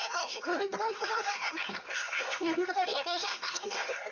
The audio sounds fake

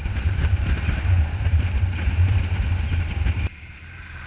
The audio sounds fake